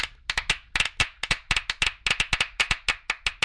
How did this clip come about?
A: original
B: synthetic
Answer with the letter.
A